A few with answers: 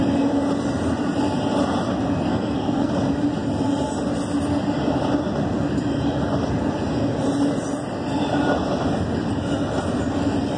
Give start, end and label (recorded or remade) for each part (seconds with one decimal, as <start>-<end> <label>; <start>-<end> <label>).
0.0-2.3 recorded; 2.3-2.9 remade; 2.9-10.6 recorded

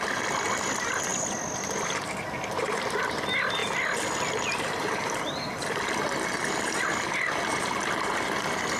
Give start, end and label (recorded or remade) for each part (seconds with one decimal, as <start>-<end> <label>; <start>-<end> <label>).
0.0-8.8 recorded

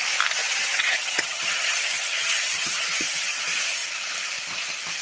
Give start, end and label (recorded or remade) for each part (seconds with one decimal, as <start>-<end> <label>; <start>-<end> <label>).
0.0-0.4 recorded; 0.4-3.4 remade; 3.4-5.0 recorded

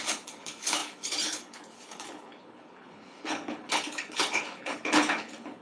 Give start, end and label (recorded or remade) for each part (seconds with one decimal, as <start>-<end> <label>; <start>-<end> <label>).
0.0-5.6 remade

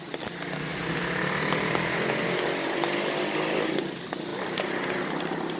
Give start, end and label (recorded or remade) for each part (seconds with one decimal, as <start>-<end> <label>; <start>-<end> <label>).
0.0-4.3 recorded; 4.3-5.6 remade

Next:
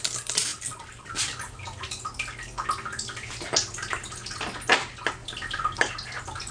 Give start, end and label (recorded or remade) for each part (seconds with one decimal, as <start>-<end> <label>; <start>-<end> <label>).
0.0-0.5 recorded; 0.5-1.3 remade; 1.3-5.2 recorded; 5.2-5.9 remade; 5.9-6.5 recorded

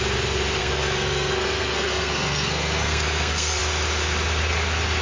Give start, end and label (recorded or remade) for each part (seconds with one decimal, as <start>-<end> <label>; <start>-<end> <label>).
0.0-0.6 recorded; 0.6-3.6 remade; 3.6-5.0 recorded

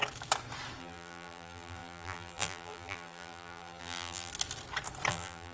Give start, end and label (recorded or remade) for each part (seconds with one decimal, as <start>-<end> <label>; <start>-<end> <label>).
0.0-0.8 recorded; 0.8-4.3 remade; 4.3-5.1 recorded; 5.1-5.5 remade